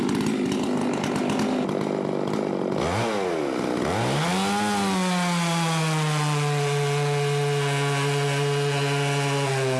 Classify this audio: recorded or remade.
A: recorded